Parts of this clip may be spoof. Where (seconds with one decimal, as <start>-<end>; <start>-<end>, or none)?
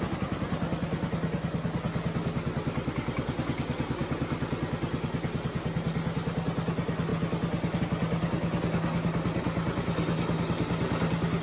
none